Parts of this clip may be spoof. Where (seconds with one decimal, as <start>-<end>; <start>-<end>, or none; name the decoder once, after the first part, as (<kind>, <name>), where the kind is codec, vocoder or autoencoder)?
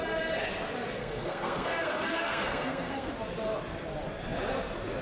1.0-3.1 (codec, SNAC)